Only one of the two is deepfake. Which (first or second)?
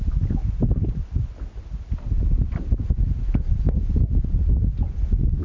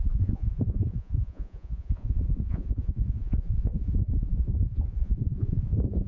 second